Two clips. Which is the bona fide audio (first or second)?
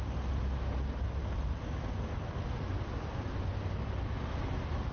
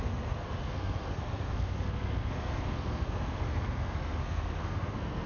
first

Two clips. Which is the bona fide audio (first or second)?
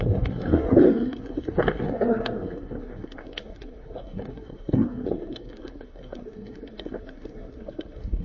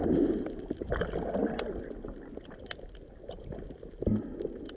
second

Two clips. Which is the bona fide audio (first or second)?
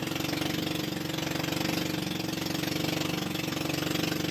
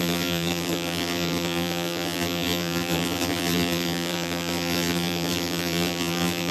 first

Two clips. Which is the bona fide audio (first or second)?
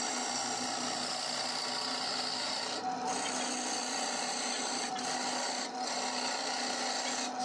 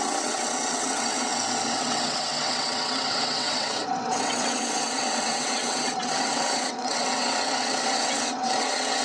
first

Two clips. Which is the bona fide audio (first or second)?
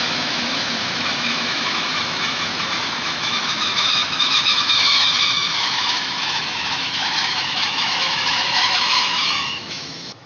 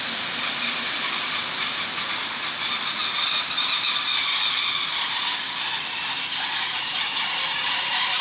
second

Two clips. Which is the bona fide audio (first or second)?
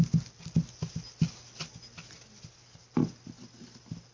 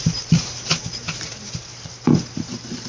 first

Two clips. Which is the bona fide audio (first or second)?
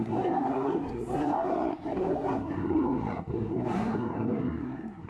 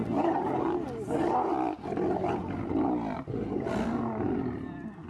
second